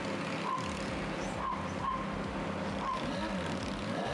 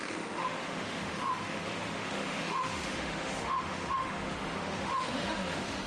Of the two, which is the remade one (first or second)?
second